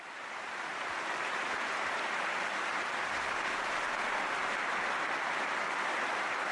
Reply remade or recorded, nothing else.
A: recorded